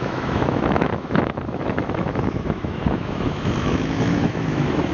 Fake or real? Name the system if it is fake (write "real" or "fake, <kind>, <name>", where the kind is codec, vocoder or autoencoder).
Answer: fake, autoencoder, DAC-VAE